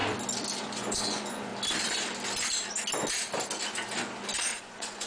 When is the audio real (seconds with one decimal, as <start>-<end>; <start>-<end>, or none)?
0.0-0.6; 1.5-4.6